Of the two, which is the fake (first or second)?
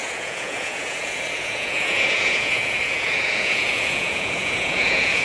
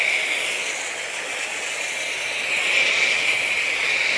first